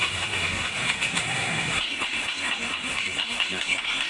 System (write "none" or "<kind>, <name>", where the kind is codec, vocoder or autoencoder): codec, SNAC